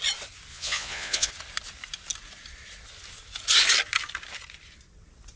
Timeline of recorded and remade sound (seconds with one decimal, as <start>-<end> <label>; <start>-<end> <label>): 0.0-0.5 recorded; 0.5-1.3 remade; 1.3-5.4 recorded